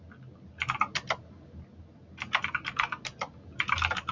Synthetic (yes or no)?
no